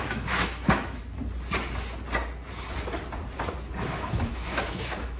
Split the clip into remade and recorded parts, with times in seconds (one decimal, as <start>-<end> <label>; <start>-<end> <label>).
0.0-1.0 remade; 1.0-3.8 recorded; 3.8-5.2 remade